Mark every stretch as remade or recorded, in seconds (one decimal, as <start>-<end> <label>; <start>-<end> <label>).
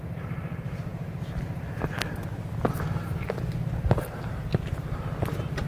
0.0-5.7 recorded